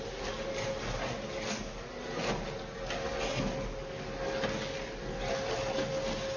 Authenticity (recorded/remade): recorded